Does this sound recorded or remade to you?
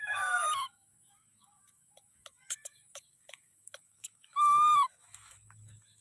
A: remade